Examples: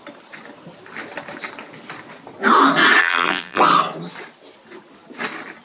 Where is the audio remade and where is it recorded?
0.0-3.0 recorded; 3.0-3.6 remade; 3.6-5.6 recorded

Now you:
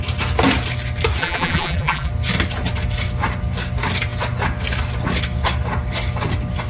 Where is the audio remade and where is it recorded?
0.0-1.2 recorded; 1.2-2.1 remade; 2.1-6.7 recorded

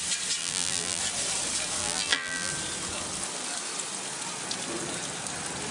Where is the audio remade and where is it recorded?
0.0-0.4 recorded; 0.4-1.0 remade; 1.0-1.8 recorded; 1.8-2.5 remade; 2.5-5.7 recorded

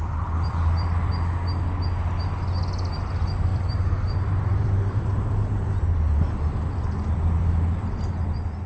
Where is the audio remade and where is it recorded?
0.0-1.1 remade; 1.1-3.5 recorded; 3.5-8.7 remade

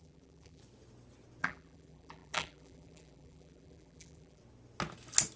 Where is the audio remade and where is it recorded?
0.0-0.6 remade; 0.6-1.4 recorded; 1.4-4.4 remade; 4.4-5.4 recorded

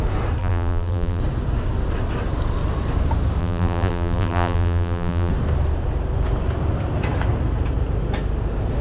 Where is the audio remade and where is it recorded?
0.0-0.4 recorded; 0.4-1.2 remade; 1.2-3.4 recorded; 3.4-5.3 remade; 5.3-8.8 recorded

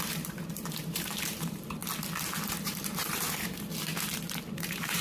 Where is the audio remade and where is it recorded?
0.0-1.8 remade; 1.8-2.5 recorded; 2.5-3.7 remade; 3.7-4.5 recorded; 4.5-5.0 remade